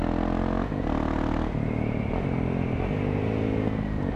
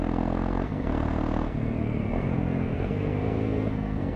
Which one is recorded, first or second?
first